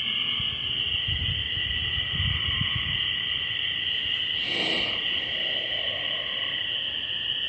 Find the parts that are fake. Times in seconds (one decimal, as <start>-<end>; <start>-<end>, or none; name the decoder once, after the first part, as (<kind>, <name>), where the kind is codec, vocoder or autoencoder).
none

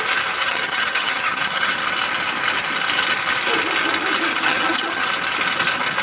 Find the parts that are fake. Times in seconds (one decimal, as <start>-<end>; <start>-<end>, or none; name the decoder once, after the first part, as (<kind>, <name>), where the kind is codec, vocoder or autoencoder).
0.4-1.7 (vocoder, HiFi-GAN); 4.3-5.1

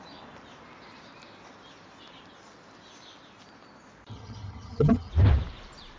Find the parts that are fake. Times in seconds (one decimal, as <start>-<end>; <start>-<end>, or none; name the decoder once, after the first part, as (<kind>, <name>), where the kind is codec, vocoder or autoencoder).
4.1-5.1 (vocoder, HiFi-GAN)

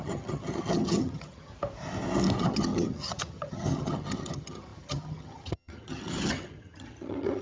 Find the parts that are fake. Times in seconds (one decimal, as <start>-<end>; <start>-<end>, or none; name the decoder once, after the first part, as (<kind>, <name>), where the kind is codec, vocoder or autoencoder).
0.0-1.5 (vocoder, HiFi-GAN); 2.4-7.4

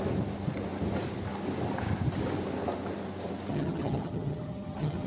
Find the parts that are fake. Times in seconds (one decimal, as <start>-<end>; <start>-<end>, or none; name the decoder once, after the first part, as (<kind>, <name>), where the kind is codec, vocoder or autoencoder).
3.5-5.1 (vocoder, HiFi-GAN)

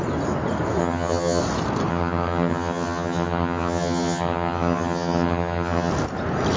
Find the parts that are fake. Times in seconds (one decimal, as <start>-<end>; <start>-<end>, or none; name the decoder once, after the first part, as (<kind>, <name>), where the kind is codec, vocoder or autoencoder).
0.8-1.4 (vocoder, HiFi-GAN); 1.9-5.9

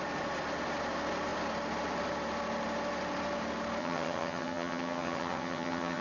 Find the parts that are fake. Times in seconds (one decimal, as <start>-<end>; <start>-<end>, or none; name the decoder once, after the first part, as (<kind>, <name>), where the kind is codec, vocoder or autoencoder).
3.8-6.0 (vocoder, HiFi-GAN)

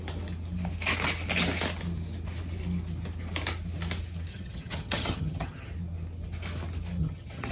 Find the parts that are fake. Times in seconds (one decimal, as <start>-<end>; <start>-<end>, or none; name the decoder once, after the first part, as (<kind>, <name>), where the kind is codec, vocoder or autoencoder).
4.3-5.7 (vocoder, HiFi-GAN); 7.0-7.5